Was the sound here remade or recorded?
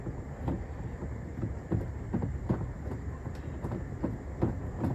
recorded